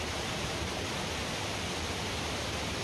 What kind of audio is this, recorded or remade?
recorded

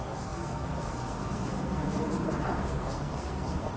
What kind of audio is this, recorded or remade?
remade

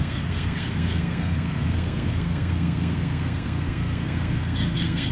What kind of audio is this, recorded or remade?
remade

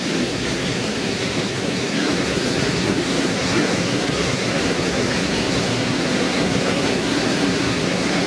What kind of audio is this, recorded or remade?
remade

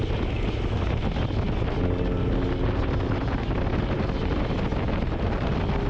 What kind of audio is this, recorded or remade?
recorded